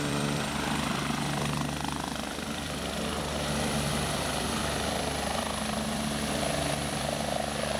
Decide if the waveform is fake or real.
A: fake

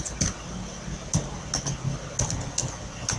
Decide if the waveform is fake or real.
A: real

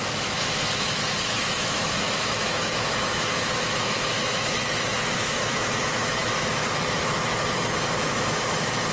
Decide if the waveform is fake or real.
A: fake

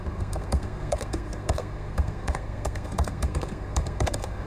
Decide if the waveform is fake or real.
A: fake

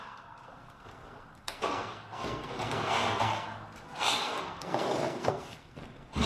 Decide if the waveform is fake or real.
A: fake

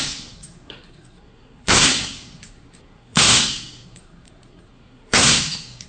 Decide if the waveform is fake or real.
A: fake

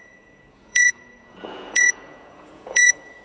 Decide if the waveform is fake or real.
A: fake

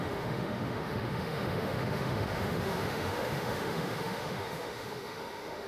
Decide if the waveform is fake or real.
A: fake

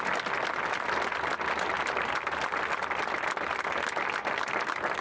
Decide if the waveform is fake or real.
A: real